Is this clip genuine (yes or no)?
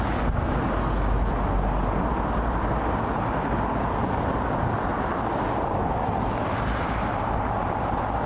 yes